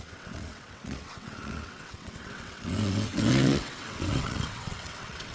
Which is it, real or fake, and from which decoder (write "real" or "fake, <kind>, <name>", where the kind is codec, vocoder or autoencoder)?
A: fake, vocoder, WaveNeXt